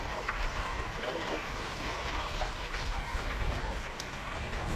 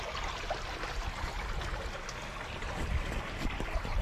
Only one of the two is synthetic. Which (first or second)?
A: first